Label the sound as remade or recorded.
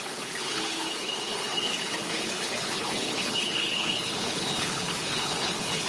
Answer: remade